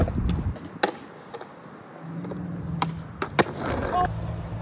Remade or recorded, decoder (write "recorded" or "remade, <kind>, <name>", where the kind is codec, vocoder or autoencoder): recorded